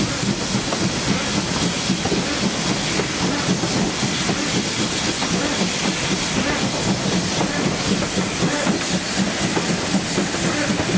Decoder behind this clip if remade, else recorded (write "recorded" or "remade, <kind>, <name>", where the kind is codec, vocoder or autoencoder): recorded